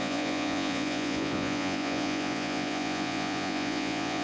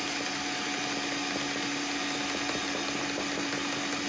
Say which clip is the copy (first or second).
first